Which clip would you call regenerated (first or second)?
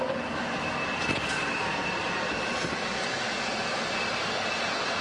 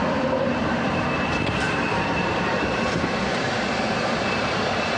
second